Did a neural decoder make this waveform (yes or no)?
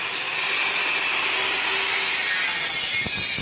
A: no